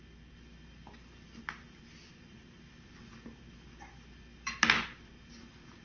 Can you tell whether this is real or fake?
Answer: real